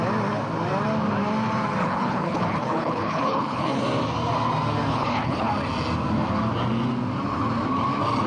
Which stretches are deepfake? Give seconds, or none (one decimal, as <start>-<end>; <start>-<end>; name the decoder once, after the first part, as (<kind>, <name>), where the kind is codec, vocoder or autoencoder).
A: 1.8-3.8 (codec, HILCodec); 4.9-5.5

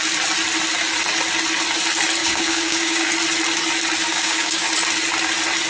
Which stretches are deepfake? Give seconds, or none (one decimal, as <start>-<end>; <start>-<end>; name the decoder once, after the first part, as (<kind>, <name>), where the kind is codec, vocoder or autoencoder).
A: 2.2-3.1 (codec, DAC); 4.1-4.7

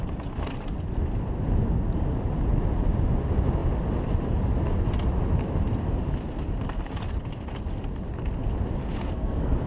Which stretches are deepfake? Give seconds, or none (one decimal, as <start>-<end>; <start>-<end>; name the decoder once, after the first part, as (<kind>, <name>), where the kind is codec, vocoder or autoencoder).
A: 8.8-9.7 (codec, SNAC)

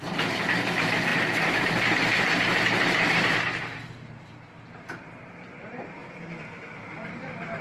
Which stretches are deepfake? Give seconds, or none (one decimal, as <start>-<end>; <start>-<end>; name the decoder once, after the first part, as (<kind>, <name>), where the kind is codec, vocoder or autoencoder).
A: 0.0-6.0 (vocoder, BigVGAN v2); 6.9-7.6

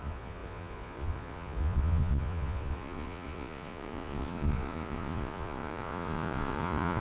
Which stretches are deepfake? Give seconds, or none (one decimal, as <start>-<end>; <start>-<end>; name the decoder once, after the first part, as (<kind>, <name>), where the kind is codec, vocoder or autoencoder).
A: 0.0-7.0 (vocoder, Vocos)